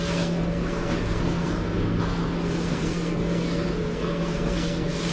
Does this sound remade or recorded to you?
remade